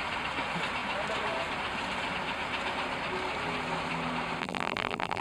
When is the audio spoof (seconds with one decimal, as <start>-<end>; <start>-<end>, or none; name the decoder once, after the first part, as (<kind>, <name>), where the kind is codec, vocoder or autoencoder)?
4.4-5.2 (vocoder, BigVGAN v2)